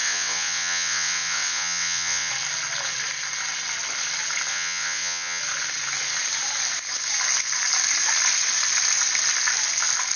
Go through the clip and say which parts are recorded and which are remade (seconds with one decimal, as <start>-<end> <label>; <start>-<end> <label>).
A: 0.0-2.3 remade; 2.3-4.5 recorded; 4.5-5.4 remade; 5.4-10.2 recorded